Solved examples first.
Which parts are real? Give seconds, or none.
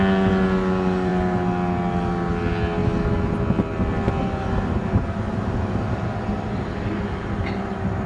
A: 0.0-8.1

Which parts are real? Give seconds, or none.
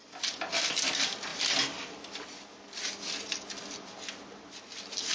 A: 0.0-5.1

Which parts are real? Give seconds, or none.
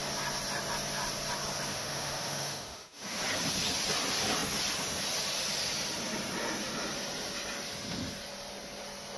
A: 0.0-1.7; 3.2-9.2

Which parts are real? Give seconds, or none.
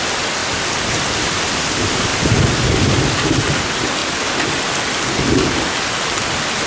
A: 0.0-6.7